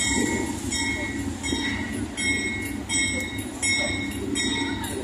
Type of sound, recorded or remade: recorded